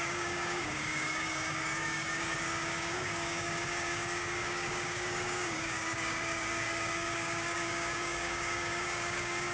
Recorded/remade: remade